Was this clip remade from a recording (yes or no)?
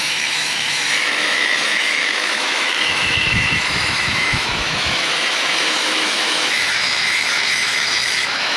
yes